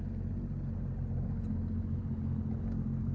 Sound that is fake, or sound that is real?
real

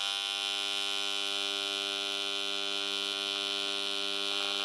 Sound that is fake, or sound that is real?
real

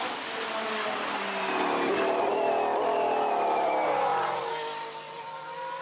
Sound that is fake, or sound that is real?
real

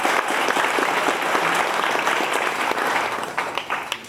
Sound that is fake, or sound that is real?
real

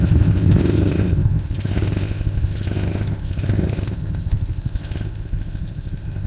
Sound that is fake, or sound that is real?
fake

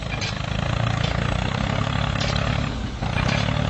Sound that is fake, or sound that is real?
real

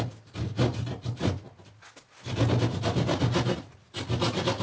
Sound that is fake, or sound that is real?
real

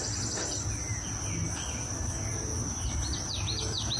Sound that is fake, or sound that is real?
real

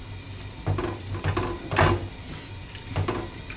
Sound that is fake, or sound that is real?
real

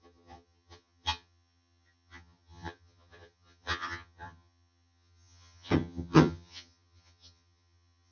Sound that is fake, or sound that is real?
fake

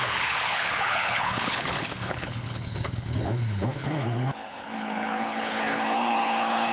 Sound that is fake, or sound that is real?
fake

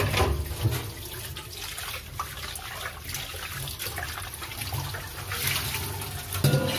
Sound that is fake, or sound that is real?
real